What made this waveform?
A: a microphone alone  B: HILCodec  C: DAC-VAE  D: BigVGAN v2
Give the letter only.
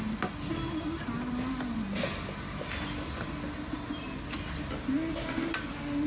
A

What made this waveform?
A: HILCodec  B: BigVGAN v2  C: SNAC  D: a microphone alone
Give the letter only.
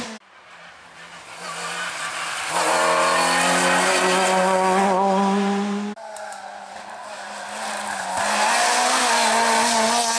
D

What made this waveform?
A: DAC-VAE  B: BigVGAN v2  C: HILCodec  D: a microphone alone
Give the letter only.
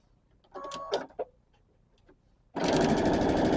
D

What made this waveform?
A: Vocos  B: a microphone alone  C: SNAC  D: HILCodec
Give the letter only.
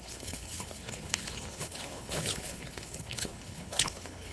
D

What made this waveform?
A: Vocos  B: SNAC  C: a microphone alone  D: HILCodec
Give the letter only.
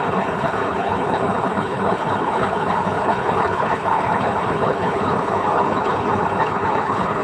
D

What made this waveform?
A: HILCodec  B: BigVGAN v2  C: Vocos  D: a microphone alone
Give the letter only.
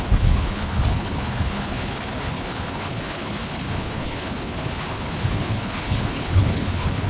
A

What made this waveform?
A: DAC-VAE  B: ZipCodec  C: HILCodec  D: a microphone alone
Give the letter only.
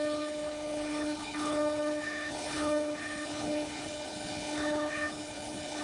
C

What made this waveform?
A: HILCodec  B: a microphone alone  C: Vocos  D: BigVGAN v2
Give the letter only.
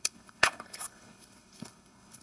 A